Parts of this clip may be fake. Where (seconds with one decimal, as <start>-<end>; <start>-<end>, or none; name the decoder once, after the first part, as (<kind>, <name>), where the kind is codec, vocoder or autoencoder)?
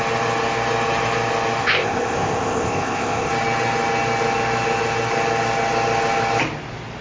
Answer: 1.6-3.3 (codec, ZipCodec)